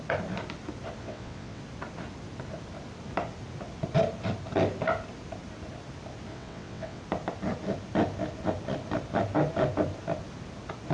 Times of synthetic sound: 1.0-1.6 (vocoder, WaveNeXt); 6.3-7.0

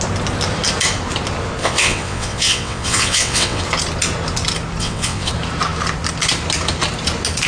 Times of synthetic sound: 1.6-3.6 (vocoder, WaveNeXt); 4.8-5.3

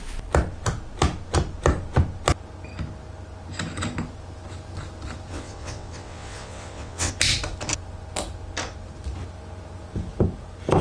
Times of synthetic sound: 5.3-7.1 (vocoder, WaveNeXt)

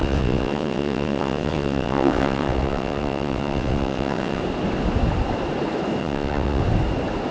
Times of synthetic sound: 0.0-4.4 (vocoder, WaveNeXt); 6.0-6.6